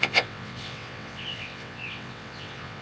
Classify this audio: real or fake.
fake